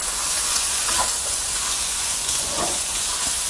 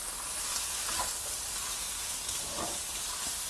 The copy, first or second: first